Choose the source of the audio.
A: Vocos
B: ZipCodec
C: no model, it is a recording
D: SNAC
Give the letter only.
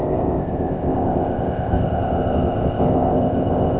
B